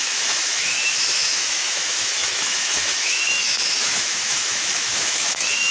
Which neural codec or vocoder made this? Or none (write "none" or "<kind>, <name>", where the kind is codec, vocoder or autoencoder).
autoencoder, DAC-VAE